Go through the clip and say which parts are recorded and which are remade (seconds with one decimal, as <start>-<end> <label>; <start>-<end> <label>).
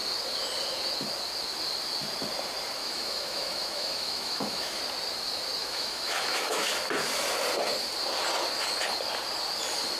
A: 0.0-2.8 recorded; 2.8-4.8 remade; 4.8-5.6 recorded; 5.6-6.7 remade; 6.7-10.0 recorded